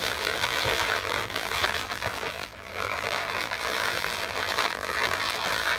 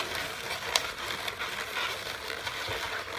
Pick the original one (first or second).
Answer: second